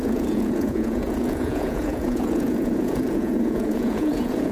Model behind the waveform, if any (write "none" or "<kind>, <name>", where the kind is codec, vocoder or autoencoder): vocoder, Vocos